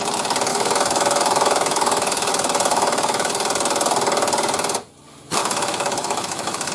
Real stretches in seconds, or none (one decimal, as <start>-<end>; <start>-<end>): 0.0-0.5; 2.3-2.7; 3.3-5.4